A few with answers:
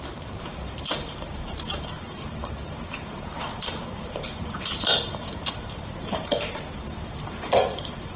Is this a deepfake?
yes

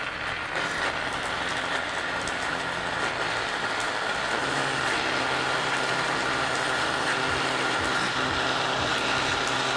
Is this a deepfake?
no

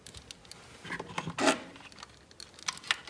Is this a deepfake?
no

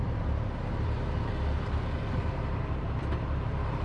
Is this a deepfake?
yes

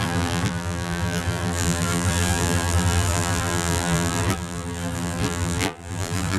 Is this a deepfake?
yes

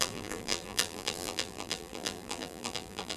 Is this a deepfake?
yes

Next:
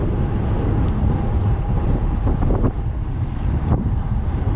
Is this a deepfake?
no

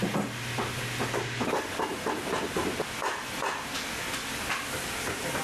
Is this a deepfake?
no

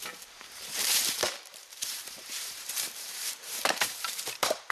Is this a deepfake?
yes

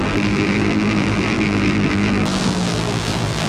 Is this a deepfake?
yes